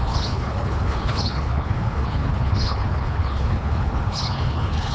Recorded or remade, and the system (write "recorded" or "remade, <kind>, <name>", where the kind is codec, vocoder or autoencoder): remade, codec, HILCodec